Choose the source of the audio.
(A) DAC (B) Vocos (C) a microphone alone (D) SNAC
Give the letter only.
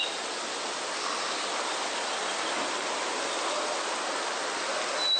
C